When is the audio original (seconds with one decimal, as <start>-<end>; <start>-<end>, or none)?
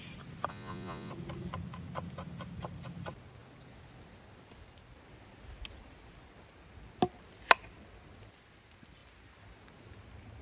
0.0-0.5; 1.1-10.4